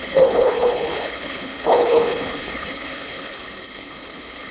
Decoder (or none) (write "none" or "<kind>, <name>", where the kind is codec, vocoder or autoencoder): codec, HILCodec